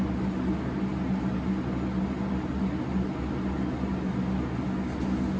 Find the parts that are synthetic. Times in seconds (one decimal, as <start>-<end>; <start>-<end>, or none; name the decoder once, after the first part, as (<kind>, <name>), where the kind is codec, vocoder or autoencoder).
none